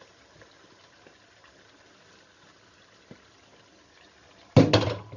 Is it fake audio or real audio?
real